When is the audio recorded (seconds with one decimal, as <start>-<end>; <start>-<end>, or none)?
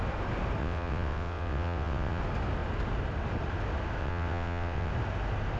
0.0-0.6; 2.2-4.0; 4.9-5.6